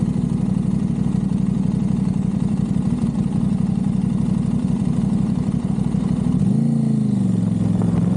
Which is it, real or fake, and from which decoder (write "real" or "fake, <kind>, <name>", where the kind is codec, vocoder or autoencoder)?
real